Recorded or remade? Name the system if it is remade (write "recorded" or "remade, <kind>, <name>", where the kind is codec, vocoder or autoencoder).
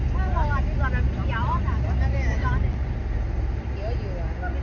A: recorded